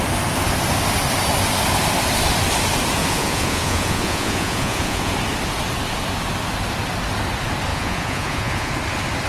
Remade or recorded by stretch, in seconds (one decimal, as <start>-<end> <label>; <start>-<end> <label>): 0.0-3.0 recorded; 3.0-5.1 remade; 5.1-7.7 recorded; 7.7-8.7 remade; 8.7-9.3 recorded